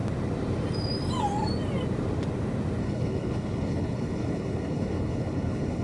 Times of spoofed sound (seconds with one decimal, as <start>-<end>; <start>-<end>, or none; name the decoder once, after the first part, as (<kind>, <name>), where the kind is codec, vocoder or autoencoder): 2.8-5.8 (codec, HILCodec)